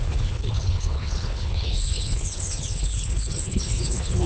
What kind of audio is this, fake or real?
fake